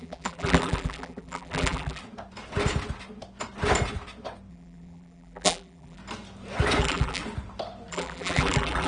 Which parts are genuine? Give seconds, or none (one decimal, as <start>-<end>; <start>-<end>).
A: 2.0-4.5; 6.0-6.8; 7.2-7.9